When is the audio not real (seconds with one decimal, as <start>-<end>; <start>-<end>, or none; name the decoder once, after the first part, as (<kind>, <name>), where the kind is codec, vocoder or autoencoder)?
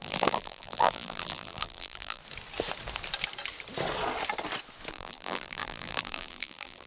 0.0-2.2 (vocoder, BigVGAN v2); 4.9-6.9